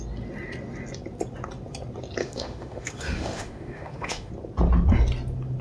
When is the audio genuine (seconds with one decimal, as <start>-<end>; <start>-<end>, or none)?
0.0-2.2; 4.3-5.6